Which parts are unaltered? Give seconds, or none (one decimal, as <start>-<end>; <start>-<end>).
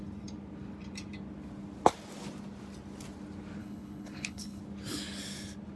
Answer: 0.0-3.6; 4.6-5.8